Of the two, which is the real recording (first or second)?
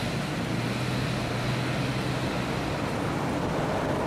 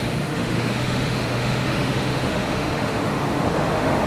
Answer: first